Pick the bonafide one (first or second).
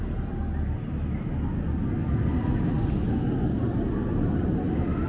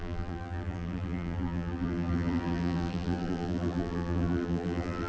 first